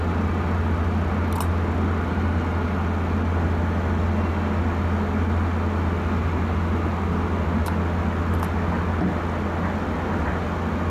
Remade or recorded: recorded